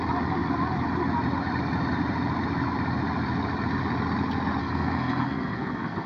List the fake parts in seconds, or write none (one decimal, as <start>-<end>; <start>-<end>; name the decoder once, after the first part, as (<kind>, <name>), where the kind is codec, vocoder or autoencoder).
4.6-6.1 (codec, SNAC)